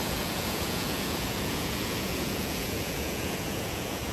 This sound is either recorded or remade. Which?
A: remade